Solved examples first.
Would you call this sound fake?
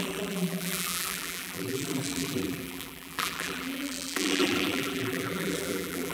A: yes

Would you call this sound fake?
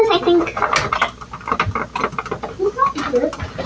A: no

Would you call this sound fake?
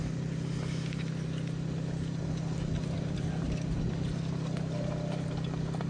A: no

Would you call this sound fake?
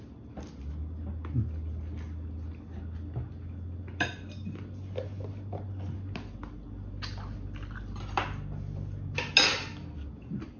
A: no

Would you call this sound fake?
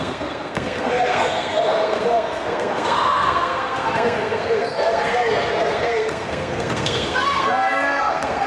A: yes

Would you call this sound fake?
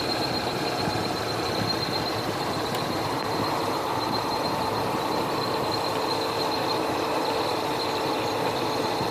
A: yes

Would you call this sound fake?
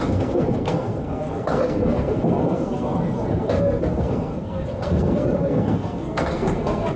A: yes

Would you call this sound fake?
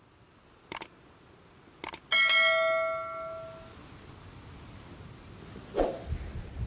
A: no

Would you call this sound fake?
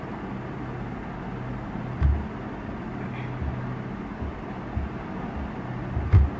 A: no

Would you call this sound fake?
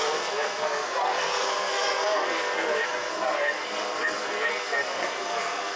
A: yes